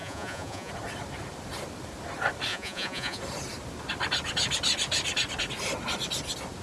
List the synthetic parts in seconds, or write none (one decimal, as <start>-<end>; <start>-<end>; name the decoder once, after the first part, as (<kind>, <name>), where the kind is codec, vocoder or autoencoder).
0.0-0.7 (vocoder, Vocos); 2.5-3.2